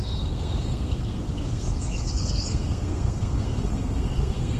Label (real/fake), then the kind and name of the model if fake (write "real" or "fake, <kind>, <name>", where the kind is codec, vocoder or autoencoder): fake, codec, SNAC